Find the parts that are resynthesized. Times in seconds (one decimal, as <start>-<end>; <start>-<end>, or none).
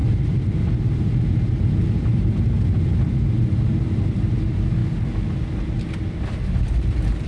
none